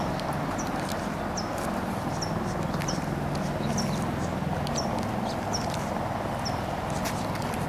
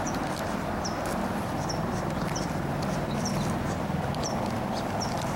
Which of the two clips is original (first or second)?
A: first